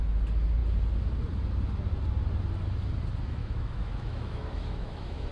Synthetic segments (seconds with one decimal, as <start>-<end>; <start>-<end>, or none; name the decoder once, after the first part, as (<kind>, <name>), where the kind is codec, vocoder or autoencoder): 3.4-5.3 (autoencoder, DAC-VAE)